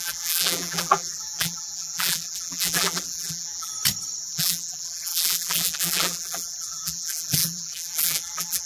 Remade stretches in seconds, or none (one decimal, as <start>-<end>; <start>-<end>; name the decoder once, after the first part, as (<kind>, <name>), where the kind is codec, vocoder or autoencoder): 0.0-3.7 (vocoder, BigVGAN v2); 4.2-8.7